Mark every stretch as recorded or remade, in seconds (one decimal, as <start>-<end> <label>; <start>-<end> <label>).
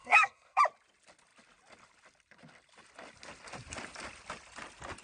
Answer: 0.0-0.6 remade; 0.6-5.0 recorded